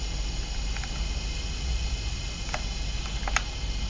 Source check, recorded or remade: recorded